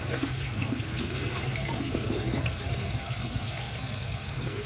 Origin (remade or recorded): remade